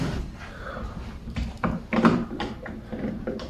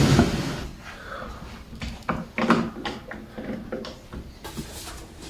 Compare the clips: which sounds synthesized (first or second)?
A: first